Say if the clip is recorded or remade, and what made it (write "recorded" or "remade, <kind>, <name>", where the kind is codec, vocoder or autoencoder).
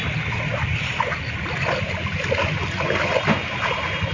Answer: recorded